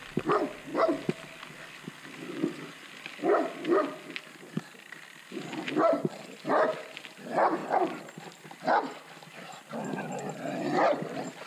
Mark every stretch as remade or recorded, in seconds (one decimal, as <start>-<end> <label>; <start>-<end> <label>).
0.0-11.5 recorded